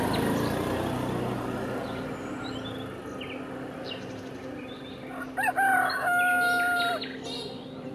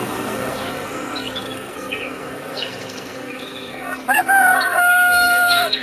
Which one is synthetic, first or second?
second